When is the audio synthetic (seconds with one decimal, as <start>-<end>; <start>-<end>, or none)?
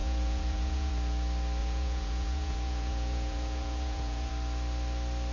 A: 0.0-0.9; 1.6-4.3